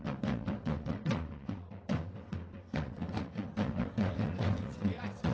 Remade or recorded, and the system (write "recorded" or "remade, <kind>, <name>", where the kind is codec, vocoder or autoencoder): remade, vocoder, WaveNeXt